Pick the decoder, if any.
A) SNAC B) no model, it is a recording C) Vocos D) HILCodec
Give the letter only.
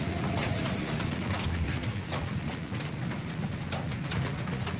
C